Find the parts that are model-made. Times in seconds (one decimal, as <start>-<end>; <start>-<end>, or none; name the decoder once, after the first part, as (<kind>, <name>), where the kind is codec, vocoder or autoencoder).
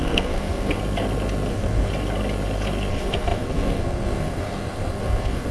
0.0-0.8 (codec, SNAC); 1.5-1.9; 2.9-5.5